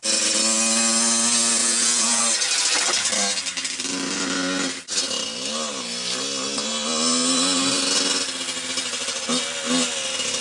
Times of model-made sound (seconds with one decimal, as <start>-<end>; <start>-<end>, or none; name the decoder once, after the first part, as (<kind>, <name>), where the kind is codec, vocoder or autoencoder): 1.6-2.2 (vocoder, Vocos)